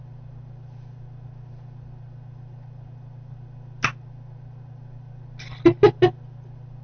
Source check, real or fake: real